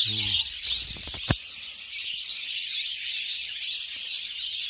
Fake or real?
real